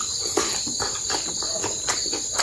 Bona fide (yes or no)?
yes